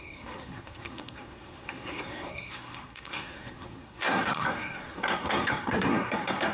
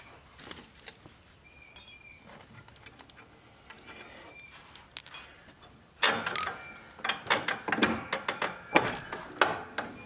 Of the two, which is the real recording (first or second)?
second